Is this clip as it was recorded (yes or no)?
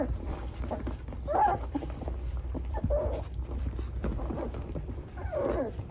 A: no